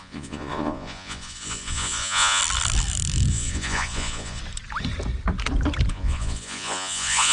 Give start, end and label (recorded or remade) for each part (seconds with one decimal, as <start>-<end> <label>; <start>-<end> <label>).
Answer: 0.0-2.4 remade; 2.4-3.3 recorded; 3.3-4.4 remade; 4.4-5.9 recorded; 5.9-7.3 remade